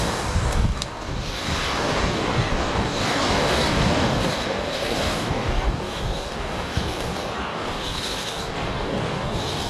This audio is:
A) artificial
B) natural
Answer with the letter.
A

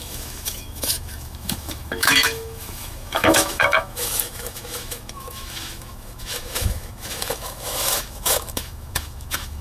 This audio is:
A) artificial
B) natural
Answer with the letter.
A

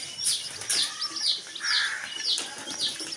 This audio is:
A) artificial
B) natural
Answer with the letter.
B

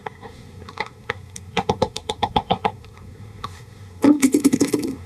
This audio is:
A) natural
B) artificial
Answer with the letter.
B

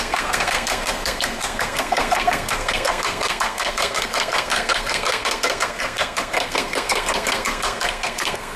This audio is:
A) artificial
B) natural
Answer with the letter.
A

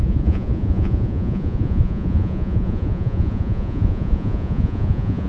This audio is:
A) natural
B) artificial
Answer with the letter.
B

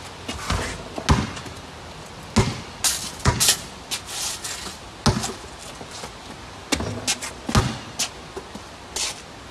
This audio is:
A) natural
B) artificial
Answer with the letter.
A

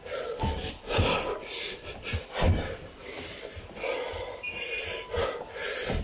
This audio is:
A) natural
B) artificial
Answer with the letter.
A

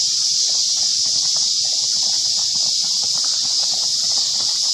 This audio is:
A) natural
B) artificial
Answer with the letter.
A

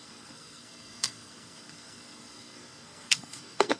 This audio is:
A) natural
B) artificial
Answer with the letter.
B